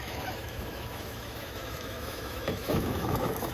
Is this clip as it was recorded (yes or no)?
no